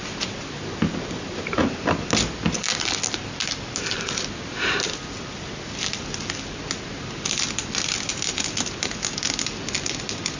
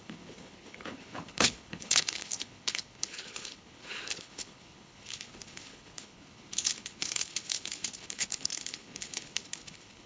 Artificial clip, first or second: second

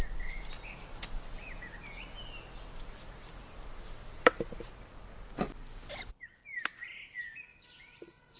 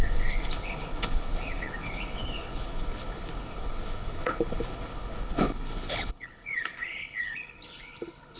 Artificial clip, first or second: second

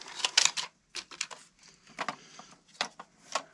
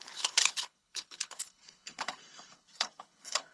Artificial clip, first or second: second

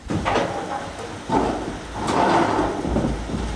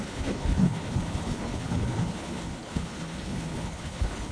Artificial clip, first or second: second